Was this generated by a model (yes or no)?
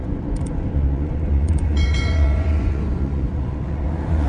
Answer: yes